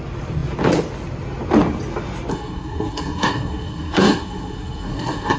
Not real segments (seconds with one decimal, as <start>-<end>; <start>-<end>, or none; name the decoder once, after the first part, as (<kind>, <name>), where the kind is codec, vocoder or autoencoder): 2.3-5.4 (codec, SNAC)